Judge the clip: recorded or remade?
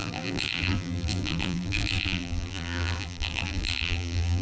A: remade